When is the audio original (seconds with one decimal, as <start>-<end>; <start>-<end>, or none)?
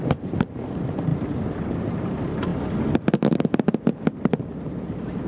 2.5-4.7